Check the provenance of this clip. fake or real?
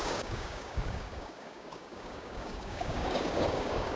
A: fake